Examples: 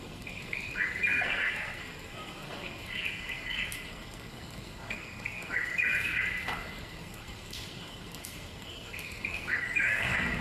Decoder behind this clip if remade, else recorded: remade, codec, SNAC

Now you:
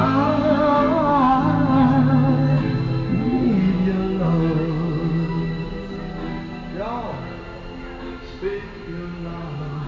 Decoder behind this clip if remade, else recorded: recorded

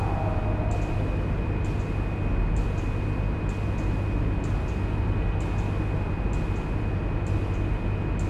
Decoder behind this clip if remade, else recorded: recorded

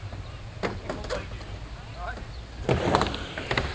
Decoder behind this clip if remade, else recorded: recorded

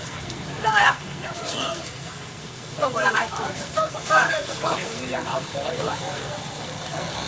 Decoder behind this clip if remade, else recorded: remade, codec, SNAC